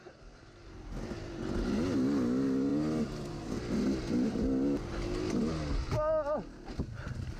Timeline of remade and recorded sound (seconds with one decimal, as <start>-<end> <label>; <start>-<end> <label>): 0.0-7.4 recorded